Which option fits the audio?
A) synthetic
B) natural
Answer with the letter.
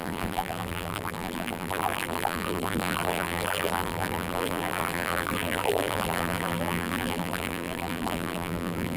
A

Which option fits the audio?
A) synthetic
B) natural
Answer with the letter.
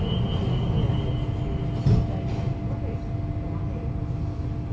B